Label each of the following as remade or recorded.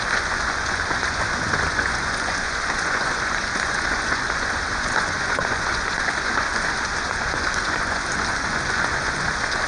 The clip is remade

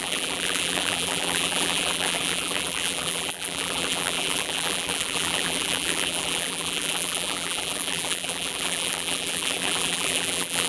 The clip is remade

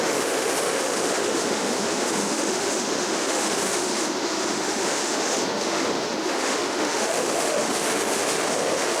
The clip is remade